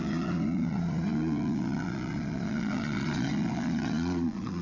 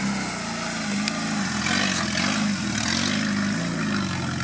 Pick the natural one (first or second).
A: second